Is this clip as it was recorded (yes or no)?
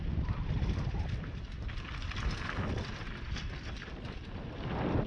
no